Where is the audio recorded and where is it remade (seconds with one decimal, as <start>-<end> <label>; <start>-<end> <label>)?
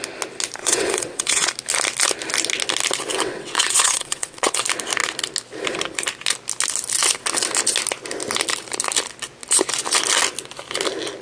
0.0-0.6 recorded; 0.6-1.5 remade; 1.5-3.1 recorded; 3.1-4.6 remade; 4.6-11.2 recorded